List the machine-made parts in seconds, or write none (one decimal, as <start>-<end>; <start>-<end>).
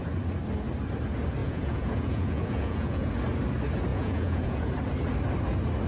1.4-3.1; 3.9-4.7